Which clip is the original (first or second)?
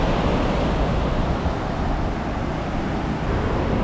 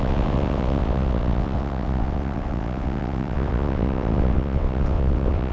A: first